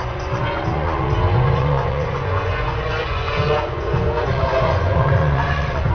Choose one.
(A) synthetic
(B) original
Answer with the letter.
A